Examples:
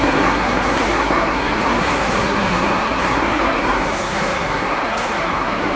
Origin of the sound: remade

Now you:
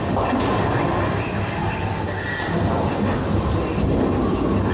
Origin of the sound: recorded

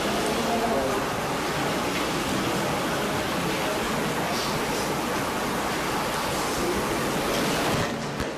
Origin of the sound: recorded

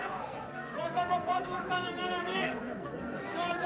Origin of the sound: remade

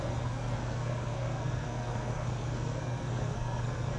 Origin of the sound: remade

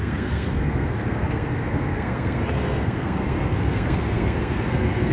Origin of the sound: remade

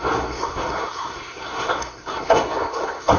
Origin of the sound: remade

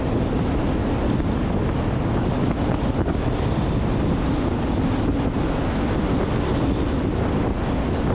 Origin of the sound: recorded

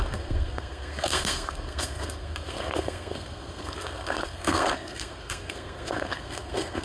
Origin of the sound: remade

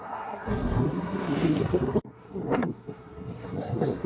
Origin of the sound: remade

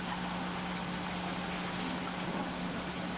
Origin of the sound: recorded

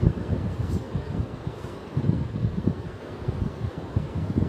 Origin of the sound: remade